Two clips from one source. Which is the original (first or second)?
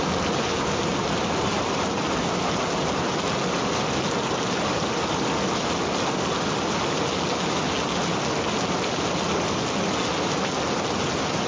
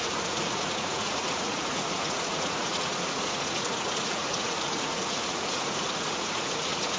first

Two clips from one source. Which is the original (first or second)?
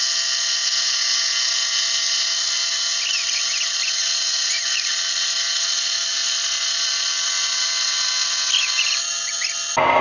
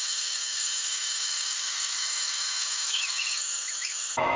first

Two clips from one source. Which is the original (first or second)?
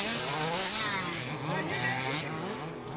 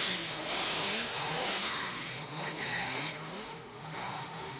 first